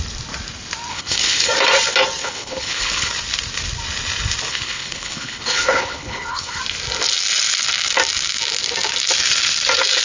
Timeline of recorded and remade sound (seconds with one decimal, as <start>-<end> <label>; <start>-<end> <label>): 0.0-0.9 recorded; 0.9-1.5 remade; 1.5-2.2 recorded; 2.2-3.1 remade; 3.1-4.5 recorded; 4.5-6.6 remade; 6.6-10.0 recorded